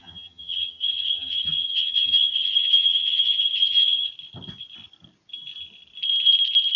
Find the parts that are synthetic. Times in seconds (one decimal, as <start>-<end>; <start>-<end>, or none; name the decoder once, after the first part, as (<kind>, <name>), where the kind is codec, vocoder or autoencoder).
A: 0.0-4.1 (vocoder, HiFi-GAN)